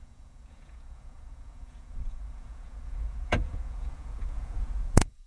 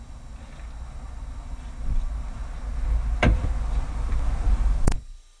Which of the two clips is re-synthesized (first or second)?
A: first